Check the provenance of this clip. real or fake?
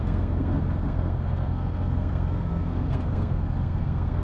fake